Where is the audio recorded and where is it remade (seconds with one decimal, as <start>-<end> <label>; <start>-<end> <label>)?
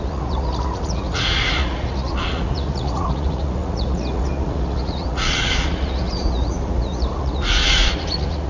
0.0-8.5 remade